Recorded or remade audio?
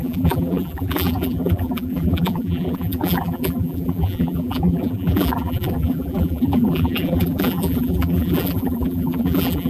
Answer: remade